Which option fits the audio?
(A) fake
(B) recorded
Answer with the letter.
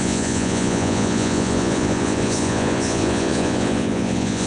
A